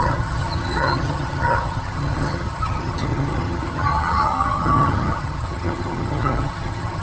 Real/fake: fake